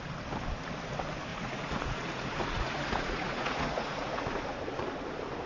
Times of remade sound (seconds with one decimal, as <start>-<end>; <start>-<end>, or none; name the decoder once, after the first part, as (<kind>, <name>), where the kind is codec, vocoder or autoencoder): 1.3-4.6 (vocoder, Vocos)